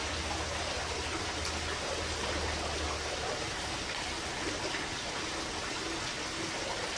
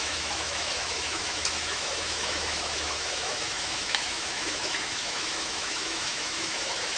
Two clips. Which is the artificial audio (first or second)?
second